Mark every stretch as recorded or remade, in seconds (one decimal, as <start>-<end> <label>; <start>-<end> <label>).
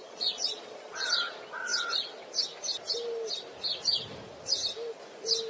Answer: 0.0-1.1 remade; 1.1-5.5 recorded